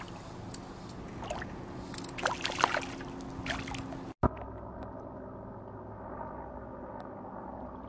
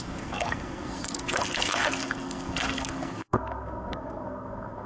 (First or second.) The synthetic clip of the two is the second